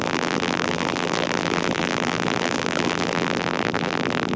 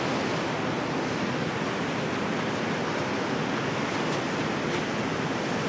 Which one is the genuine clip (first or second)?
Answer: second